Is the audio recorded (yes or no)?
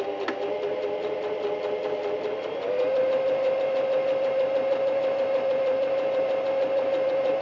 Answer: yes